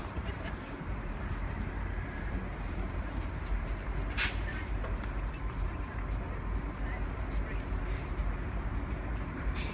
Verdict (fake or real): fake